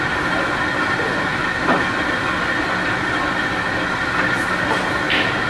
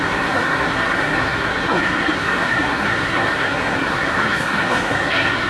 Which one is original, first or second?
first